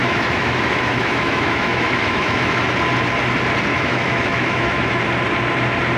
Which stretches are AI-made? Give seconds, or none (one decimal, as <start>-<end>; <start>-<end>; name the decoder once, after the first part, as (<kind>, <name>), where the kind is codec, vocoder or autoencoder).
0.0-2.6 (autoencoder, DAC-VAE); 3.7-5.0